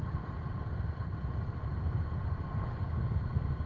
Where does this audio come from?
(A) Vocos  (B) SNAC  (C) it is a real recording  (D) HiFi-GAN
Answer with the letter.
C